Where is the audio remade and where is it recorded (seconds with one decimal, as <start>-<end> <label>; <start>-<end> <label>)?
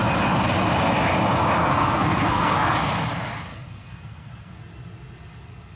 0.0-1.6 recorded; 1.6-2.7 remade; 2.7-3.5 recorded; 3.5-4.6 remade; 4.6-5.8 recorded